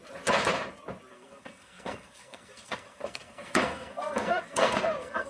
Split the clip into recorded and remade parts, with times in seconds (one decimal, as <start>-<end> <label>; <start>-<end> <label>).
0.0-1.1 recorded; 1.1-5.3 remade